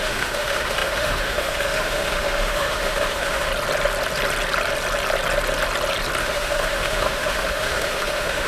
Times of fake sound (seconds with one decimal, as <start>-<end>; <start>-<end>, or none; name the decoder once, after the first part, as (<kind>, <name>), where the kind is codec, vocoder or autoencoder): 0.0-3.5 (autoencoder, DAC-VAE); 6.2-8.5